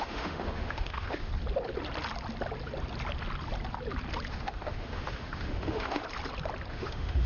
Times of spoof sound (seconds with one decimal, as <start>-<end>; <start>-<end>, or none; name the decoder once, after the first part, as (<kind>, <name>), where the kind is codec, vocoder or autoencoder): 0.0-1.3 (autoencoder, DAC-VAE); 4.3-6.0; 6.7-7.3

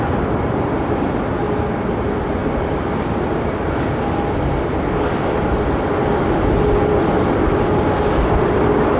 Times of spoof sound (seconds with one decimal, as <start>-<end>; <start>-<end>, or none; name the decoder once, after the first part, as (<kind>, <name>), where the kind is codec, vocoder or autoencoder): none

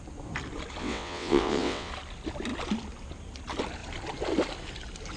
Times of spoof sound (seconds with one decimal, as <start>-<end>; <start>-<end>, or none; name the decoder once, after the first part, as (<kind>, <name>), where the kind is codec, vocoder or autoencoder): 0.8-1.9 (vocoder, WaveNeXt)

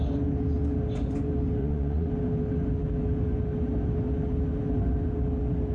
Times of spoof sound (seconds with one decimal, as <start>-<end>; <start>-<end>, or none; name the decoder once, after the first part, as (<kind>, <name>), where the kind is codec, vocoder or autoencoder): 1.6-2.1 (vocoder, Vocos)

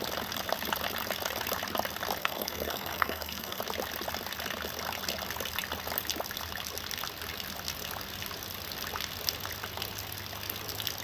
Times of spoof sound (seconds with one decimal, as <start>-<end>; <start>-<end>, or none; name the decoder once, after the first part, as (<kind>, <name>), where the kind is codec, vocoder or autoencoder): 2.2-3.6 (codec, SNAC)

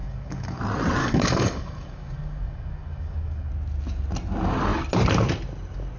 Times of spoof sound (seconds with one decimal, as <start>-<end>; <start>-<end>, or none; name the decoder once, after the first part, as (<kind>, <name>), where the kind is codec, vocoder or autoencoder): 0.0-0.6 (codec, DAC); 1.0-3.5